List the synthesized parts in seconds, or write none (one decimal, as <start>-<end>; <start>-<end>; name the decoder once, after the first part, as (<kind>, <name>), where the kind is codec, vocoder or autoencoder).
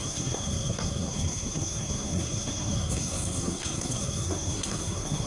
0.0-5.3 (codec, SNAC)